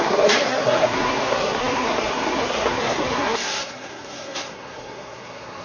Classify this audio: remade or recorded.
remade